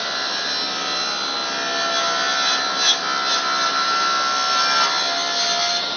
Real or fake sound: real